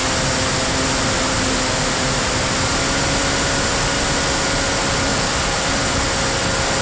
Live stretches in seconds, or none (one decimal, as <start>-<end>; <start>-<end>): 0.0-5.1; 5.9-6.8

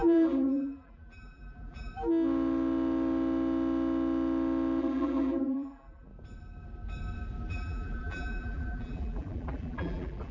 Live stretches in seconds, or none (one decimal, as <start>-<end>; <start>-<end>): 1.9-4.8; 6.1-7.5

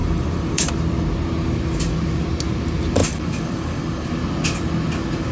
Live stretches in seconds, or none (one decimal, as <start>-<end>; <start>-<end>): 0.7-3.0; 4.1-5.3

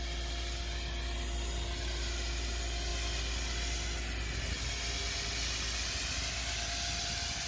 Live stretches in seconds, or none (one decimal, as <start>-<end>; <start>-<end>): 0.0-7.5